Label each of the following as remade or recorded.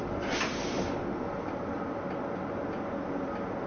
recorded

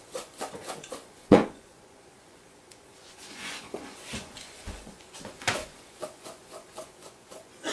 remade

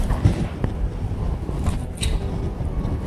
recorded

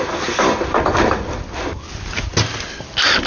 recorded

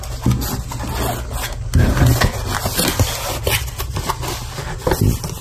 recorded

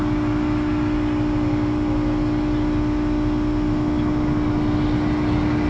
recorded